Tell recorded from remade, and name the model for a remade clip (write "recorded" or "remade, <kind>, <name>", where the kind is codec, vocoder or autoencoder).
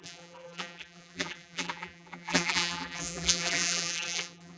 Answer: remade, vocoder, BigVGAN v2